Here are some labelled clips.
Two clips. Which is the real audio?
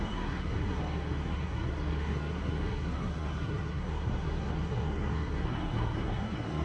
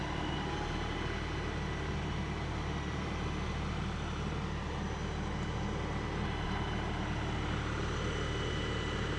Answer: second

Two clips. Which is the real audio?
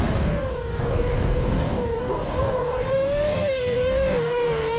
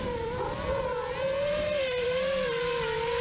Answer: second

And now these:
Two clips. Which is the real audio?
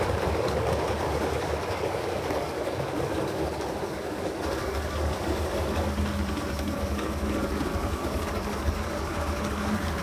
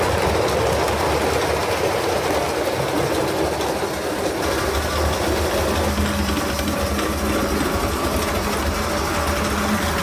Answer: second